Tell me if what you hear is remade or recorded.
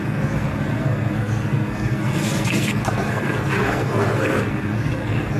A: remade